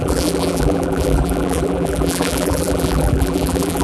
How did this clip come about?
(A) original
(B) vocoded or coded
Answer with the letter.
B